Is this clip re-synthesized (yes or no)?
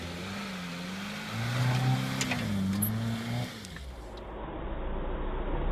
no